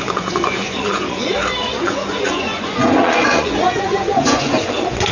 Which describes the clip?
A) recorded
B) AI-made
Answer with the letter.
B